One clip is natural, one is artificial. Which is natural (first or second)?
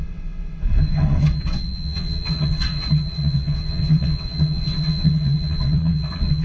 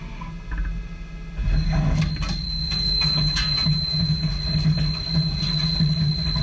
second